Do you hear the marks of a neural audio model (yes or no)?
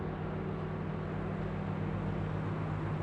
no